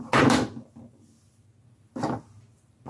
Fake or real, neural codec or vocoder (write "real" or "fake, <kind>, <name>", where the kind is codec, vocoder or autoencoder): real